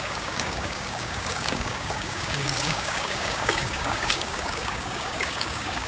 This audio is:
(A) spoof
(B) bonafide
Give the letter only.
A